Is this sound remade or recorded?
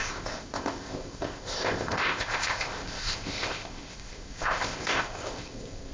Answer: remade